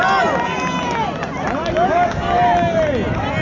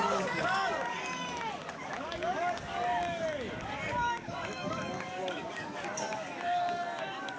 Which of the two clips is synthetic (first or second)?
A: second